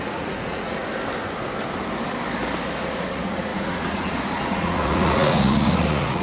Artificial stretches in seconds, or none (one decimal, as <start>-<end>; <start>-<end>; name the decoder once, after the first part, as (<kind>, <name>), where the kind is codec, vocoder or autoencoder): 0.0-0.8 (vocoder, Vocos); 2.8-6.2